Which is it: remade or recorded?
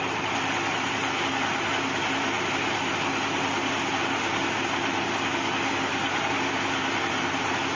recorded